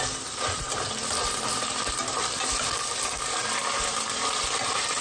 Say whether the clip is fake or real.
real